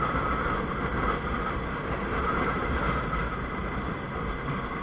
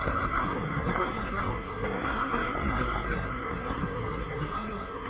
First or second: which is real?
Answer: first